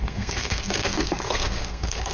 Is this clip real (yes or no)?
no